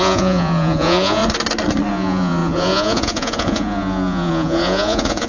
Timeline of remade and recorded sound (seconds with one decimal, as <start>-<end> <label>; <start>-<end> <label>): 0.0-1.2 remade; 1.2-1.9 recorded; 1.9-5.3 remade

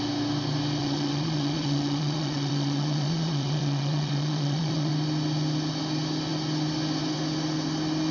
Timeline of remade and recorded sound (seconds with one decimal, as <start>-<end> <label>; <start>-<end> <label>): 0.0-0.8 recorded; 0.8-4.9 remade; 4.9-8.1 recorded

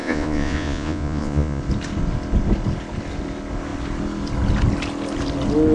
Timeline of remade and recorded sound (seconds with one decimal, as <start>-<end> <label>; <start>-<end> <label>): 0.0-1.6 remade; 1.6-5.7 recorded

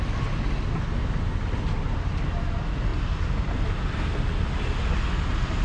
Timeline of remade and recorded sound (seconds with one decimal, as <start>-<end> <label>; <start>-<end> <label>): 0.0-5.6 recorded

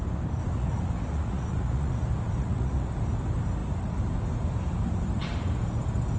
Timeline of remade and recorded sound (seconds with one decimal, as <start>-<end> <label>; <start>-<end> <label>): 0.0-0.4 recorded; 0.4-1.9 remade; 1.9-2.4 recorded; 2.4-2.9 remade; 2.9-6.2 recorded

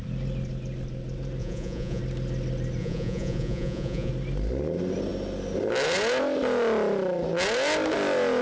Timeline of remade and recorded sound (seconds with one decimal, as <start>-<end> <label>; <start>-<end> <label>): 0.0-1.4 recorded; 1.4-2.0 remade; 2.0-2.8 recorded; 2.8-4.1 remade; 4.1-8.4 recorded